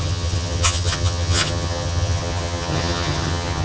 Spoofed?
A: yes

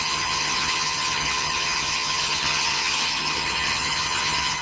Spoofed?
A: yes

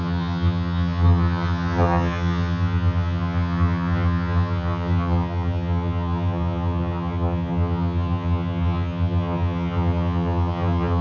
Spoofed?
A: yes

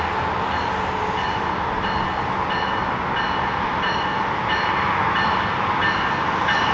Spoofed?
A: no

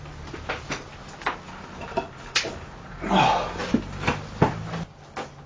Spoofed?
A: no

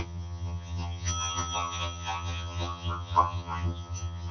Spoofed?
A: yes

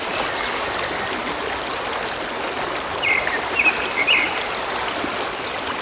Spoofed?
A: no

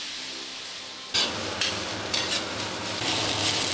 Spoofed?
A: no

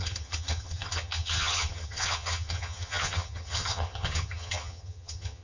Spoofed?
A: yes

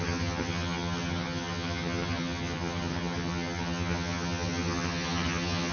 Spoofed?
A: yes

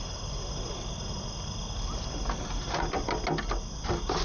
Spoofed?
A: no